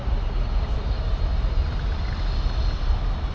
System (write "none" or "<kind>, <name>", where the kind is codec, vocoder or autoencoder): none